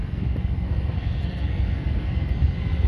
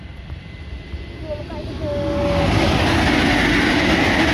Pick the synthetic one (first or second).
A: first